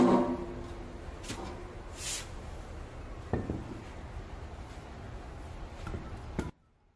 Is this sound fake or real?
real